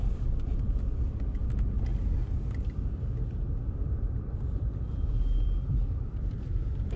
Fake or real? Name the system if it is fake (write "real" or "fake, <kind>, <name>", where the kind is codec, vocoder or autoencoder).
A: fake, vocoder, BigVGAN v2